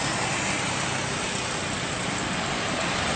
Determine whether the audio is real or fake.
real